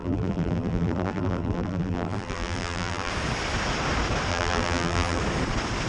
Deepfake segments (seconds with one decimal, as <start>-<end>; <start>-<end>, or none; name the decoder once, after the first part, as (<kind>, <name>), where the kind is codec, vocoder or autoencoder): 0.0-3.1 (vocoder, BigVGAN v2); 4.3-5.2